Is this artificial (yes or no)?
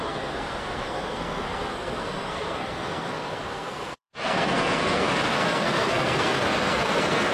yes